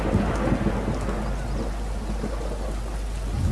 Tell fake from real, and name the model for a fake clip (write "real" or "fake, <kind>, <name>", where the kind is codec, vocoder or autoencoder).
real